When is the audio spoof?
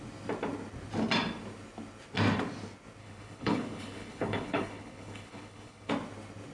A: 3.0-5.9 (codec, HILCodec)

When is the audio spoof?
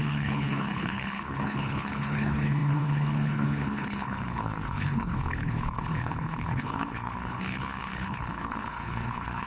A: 0.0-9.5 (codec, HILCodec)